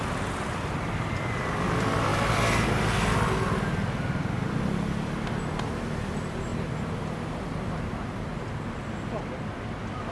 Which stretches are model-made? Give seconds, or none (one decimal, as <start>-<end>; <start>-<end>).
none